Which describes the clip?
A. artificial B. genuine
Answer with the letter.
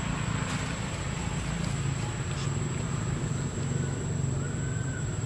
B